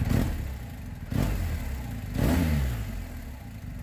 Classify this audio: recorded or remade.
recorded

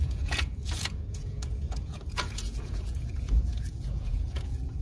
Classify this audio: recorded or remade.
remade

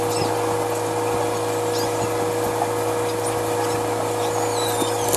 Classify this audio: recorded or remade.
recorded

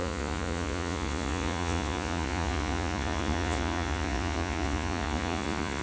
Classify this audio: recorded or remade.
remade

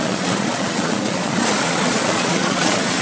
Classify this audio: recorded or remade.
remade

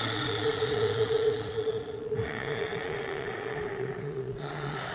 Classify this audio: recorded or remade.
remade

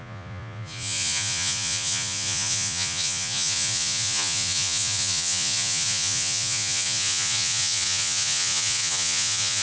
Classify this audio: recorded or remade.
remade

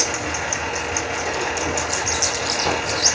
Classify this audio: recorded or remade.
recorded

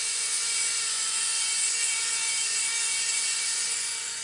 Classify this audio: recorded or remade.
remade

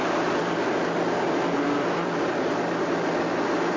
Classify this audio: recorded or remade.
recorded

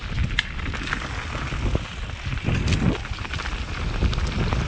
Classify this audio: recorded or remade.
recorded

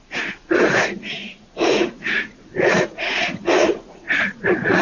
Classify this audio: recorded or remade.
remade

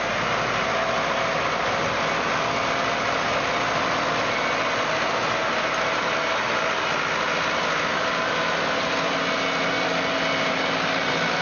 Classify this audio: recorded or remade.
recorded